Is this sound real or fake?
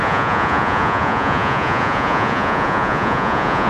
fake